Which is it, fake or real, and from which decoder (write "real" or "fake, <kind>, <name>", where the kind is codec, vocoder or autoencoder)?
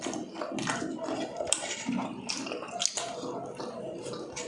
real